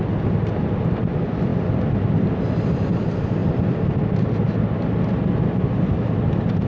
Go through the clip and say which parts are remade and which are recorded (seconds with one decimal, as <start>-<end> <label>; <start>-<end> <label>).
0.0-6.7 recorded